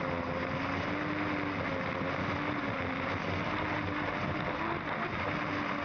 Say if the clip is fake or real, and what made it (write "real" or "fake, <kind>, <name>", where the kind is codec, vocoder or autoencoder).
real